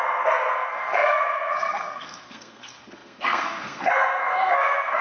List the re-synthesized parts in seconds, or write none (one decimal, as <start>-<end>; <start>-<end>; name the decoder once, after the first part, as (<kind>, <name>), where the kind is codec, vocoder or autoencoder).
0.0-5.0 (codec, SNAC)